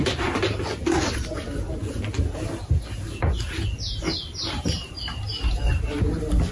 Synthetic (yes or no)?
no